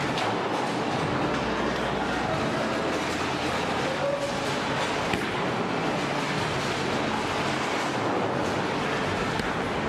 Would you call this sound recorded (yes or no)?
yes